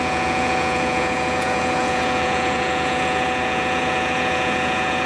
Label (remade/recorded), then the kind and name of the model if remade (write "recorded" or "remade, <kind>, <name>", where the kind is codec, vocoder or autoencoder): remade, vocoder, Vocos